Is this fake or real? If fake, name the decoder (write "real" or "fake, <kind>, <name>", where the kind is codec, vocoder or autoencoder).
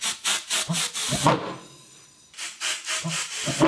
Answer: real